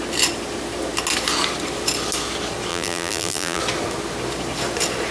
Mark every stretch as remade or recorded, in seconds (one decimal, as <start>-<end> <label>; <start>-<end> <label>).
0.0-2.7 recorded; 2.7-3.6 remade; 3.6-5.1 recorded